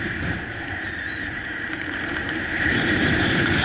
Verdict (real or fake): fake